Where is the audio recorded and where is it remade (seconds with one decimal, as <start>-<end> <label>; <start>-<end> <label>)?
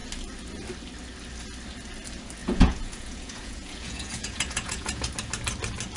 0.0-2.4 recorded; 2.4-5.1 remade; 5.1-6.0 recorded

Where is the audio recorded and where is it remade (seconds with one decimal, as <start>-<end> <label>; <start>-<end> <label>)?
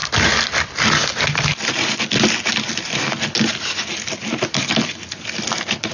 0.0-5.9 recorded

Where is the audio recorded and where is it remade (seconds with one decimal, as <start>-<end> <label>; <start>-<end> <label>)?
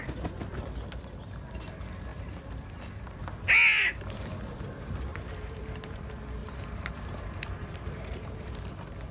0.0-2.1 recorded; 2.1-3.2 remade; 3.2-5.1 recorded; 5.1-6.0 remade; 6.0-6.4 recorded; 6.4-8.6 remade; 8.6-9.1 recorded